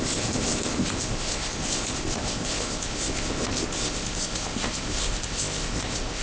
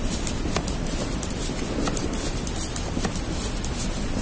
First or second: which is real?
second